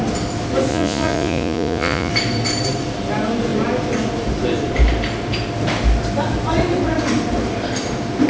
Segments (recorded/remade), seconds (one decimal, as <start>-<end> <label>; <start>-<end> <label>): 0.0-0.7 recorded; 0.7-2.1 remade; 2.1-8.3 recorded